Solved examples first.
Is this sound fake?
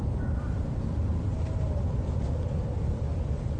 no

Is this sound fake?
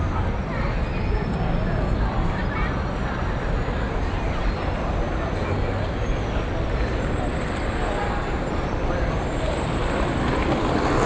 no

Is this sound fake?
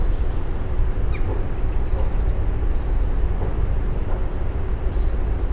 no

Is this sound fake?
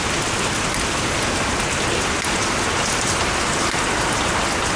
no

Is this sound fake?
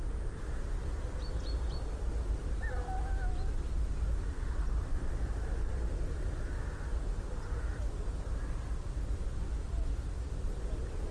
no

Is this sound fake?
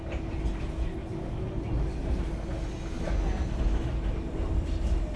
no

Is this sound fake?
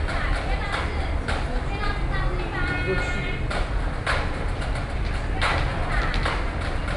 no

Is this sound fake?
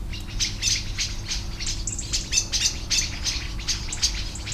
no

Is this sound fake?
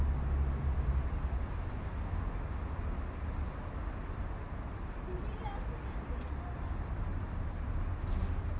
no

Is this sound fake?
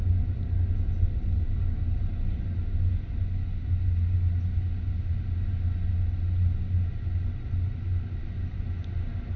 no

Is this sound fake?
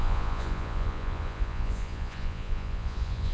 yes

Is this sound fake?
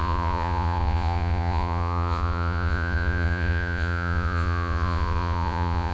yes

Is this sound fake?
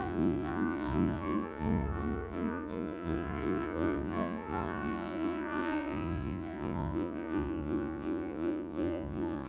yes